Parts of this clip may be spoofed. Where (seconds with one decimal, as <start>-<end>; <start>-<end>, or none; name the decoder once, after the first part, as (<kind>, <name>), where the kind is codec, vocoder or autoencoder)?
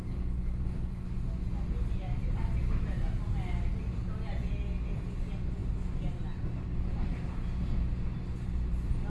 none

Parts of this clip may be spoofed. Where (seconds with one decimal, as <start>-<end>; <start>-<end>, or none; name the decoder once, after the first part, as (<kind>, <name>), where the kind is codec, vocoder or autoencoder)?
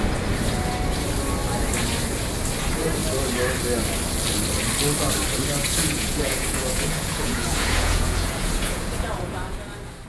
5.6-9.6 (vocoder, Vocos)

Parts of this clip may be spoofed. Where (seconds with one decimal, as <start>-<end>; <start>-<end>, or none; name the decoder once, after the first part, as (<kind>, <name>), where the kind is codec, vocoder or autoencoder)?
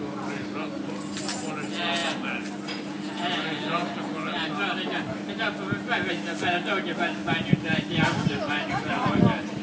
none